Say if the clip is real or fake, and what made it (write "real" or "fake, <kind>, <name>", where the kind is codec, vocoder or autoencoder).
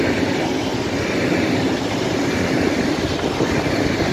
real